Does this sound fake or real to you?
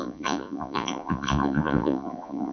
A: fake